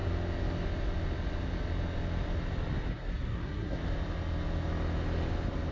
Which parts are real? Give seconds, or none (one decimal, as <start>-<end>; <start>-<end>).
0.0-2.9; 3.8-5.7